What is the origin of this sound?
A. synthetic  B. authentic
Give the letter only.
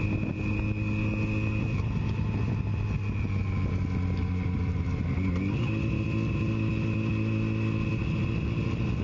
B